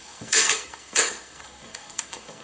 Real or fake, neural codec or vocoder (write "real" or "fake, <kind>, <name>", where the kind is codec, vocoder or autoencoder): fake, codec, SNAC